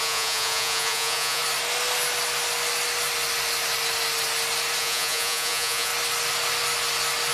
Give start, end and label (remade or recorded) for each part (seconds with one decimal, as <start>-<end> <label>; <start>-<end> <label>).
0.0-1.4 remade; 1.4-4.8 recorded; 4.8-5.9 remade; 5.9-7.3 recorded